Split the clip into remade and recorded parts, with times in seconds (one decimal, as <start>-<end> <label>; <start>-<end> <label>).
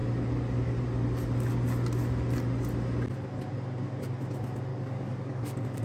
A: 0.0-4.7 recorded; 4.7-5.8 remade